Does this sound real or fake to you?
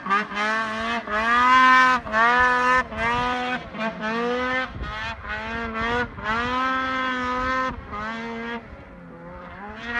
real